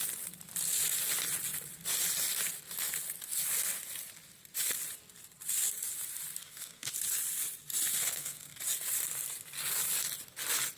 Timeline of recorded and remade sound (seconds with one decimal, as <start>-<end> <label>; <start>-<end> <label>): 0.0-6.4 recorded; 6.4-6.9 remade; 6.9-7.9 recorded; 7.9-8.6 remade; 8.6-10.8 recorded